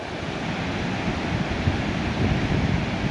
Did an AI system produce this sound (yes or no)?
no